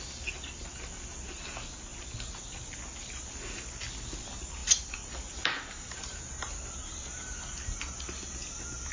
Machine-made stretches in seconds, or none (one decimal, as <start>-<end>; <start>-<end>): none